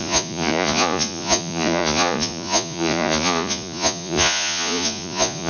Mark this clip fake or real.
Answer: fake